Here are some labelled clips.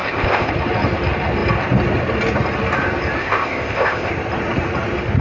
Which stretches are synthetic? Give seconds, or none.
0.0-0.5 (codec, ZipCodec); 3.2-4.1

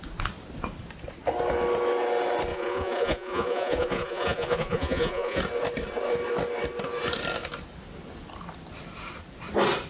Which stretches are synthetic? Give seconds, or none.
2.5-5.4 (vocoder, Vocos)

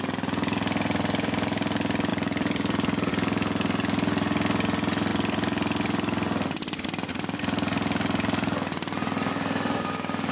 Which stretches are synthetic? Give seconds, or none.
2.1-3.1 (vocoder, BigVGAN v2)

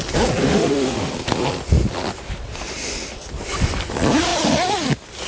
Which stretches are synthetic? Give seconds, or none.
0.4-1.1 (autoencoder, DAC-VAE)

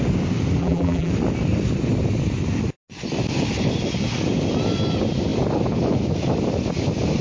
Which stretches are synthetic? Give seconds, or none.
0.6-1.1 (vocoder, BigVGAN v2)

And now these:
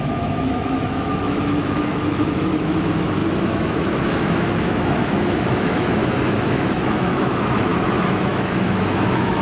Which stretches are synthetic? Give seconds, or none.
0.0-9.4 (autoencoder, DAC-VAE)